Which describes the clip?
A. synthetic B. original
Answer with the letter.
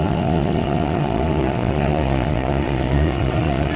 A